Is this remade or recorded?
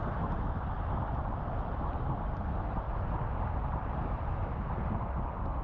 recorded